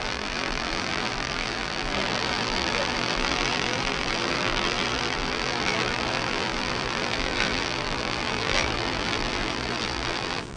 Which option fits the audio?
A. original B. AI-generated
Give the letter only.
B